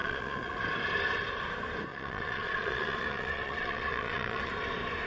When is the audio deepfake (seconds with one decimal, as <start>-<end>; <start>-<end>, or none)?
0.0-0.6; 1.9-4.5